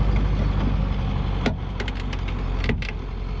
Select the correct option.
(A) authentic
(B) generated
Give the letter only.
A